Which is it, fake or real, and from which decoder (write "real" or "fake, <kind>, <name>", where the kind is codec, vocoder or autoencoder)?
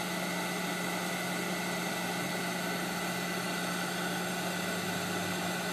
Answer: real